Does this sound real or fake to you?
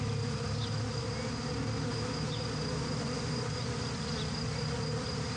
real